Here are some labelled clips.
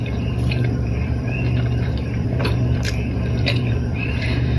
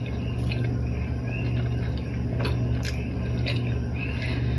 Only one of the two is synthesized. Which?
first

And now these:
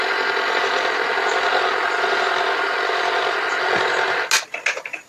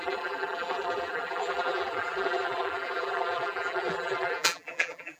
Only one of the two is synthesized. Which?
second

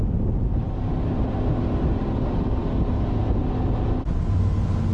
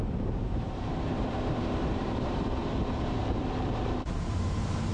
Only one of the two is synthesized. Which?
second